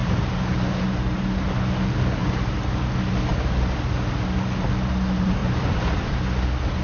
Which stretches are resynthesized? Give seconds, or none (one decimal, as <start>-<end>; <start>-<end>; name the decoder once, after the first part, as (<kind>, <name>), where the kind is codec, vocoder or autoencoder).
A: 0.0-1.2 (vocoder, BigVGAN v2); 2.2-2.8; 5.4-6.2